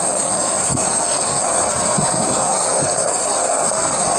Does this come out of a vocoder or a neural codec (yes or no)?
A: yes